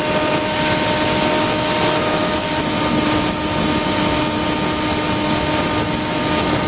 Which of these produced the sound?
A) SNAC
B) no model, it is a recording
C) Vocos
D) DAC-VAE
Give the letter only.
B